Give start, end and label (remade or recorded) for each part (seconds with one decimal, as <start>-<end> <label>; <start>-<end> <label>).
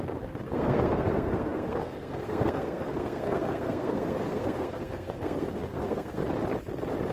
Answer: 0.0-6.2 remade; 6.2-7.1 recorded